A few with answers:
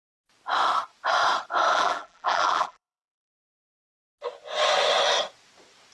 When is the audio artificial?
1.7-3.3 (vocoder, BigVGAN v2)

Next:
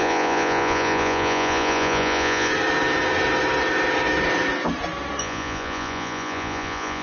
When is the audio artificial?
0.0-2.5 (vocoder, Vocos); 5.2-7.0

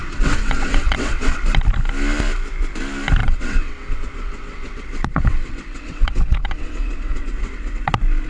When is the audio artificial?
0.0-1.4 (vocoder, WaveNeXt); 3.2-7.9

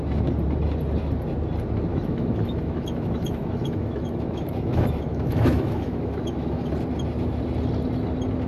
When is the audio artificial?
1.9-6.7 (autoencoder, DAC-VAE)

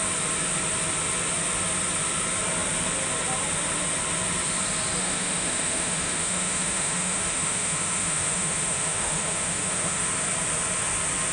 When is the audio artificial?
5.0-10.1 (autoencoder, DAC-VAE)

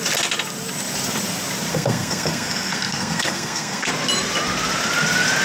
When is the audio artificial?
1.7-3.9 (codec, SNAC)

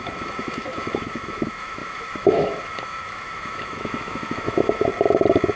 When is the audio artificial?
0.0-4.9 (autoencoder, DAC-VAE)

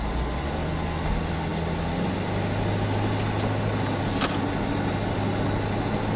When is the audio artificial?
none